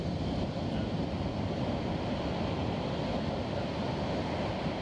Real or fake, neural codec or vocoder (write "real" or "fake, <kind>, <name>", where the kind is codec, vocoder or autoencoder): real